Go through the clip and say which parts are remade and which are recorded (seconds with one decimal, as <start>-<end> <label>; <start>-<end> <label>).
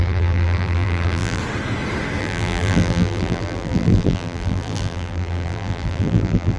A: 0.0-1.4 remade; 1.4-2.2 recorded; 2.2-6.6 remade